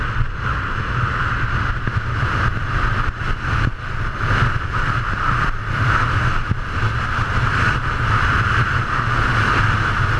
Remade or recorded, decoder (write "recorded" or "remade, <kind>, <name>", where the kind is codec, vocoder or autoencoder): recorded